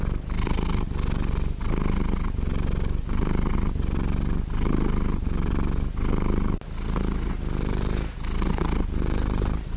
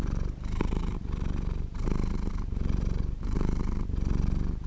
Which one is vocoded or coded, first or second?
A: second